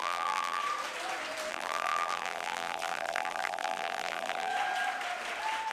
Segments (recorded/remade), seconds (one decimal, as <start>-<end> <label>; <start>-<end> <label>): 0.0-0.6 remade; 0.6-1.5 recorded; 1.5-4.5 remade; 4.5-5.7 recorded